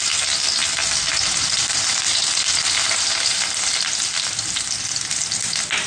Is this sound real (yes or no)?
yes